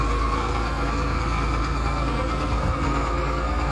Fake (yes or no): yes